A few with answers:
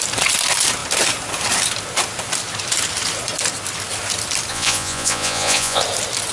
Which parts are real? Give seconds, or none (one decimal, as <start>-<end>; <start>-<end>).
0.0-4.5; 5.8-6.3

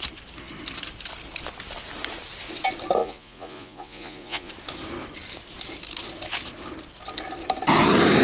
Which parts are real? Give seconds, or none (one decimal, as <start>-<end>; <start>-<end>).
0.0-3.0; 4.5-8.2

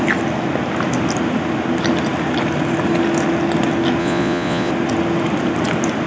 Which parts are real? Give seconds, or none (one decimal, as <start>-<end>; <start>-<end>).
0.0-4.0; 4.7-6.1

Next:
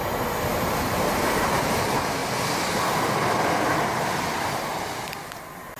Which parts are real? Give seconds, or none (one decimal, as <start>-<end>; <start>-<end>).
0.0-0.6; 2.2-5.8